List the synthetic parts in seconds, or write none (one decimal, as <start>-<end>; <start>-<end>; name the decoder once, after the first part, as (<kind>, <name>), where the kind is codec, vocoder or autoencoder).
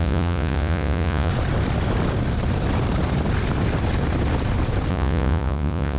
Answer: 0.0-1.3 (vocoder, Vocos); 4.9-6.0